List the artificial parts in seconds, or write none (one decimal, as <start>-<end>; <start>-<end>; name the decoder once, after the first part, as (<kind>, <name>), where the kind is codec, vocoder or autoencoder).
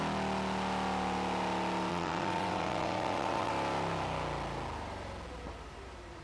1.9-3.5 (vocoder, WaveNeXt)